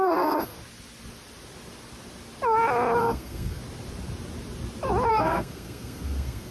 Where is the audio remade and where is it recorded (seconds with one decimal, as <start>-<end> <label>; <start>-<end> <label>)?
0.0-0.5 remade; 0.5-3.0 recorded; 3.0-3.6 remade; 3.6-5.1 recorded; 5.1-6.5 remade